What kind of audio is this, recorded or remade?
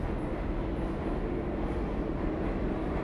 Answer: recorded